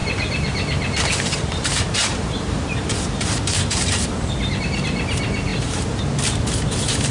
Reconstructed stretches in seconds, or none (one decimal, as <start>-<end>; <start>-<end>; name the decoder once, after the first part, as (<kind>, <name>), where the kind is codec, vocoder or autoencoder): 0.0-4.3 (vocoder, BigVGAN v2); 5.5-6.0